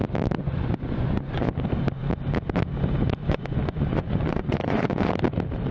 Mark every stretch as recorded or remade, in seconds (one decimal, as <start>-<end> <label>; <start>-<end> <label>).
0.0-0.4 recorded; 0.4-1.5 remade; 1.5-3.2 recorded; 3.2-5.1 remade; 5.1-5.7 recorded